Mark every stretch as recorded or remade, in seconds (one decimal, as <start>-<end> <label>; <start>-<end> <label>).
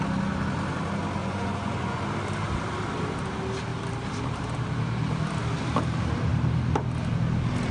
0.0-1.2 recorded; 1.2-2.0 remade; 2.0-7.7 recorded